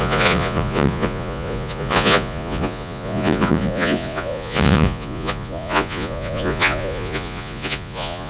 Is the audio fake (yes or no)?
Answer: yes